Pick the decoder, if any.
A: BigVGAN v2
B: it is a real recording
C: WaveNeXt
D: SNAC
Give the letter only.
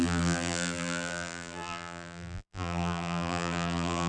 A